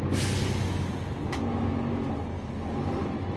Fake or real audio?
real